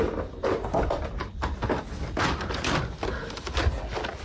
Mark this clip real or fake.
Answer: real